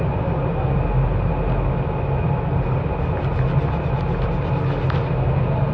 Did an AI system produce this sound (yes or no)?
no